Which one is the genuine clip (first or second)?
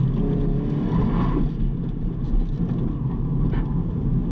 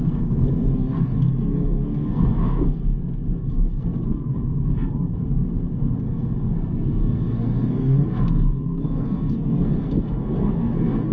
first